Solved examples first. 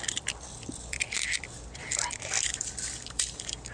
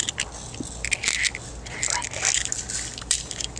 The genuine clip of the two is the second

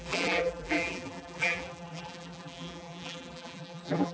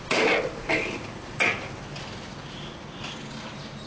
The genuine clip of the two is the second